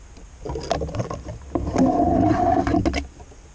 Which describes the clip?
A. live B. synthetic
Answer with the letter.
A